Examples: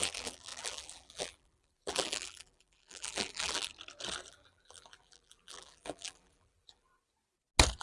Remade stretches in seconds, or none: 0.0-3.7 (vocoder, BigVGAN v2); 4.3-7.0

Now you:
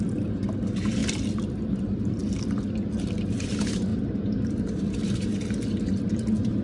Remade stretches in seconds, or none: 0.0-1.0 (vocoder, BigVGAN v2); 1.7-2.2; 3.5-5.3; 6.1-6.6

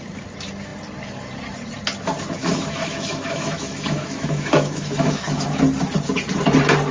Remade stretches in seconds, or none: 2.4-5.6 (autoencoder, DAC-VAE)